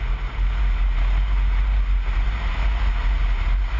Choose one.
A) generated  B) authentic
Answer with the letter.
B